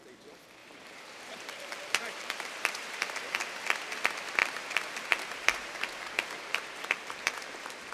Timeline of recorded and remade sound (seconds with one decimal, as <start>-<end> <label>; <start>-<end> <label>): 0.0-0.6 recorded; 0.6-3.1 remade; 3.1-4.4 recorded; 4.4-7.9 remade